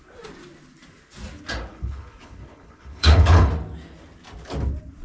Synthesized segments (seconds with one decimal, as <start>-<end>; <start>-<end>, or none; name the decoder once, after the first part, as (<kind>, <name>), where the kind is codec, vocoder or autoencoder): 1.7-3.5 (codec, HILCodec)